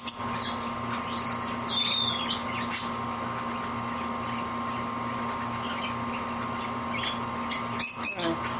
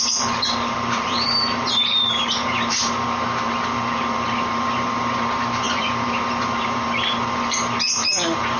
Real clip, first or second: first